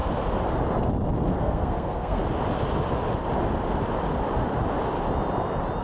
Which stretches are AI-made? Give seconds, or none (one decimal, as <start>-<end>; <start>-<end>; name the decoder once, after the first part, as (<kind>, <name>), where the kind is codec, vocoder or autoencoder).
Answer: 1.4-2.2 (codec, SNAC)